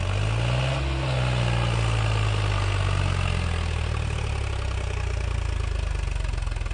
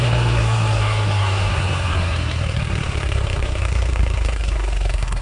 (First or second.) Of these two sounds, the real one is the first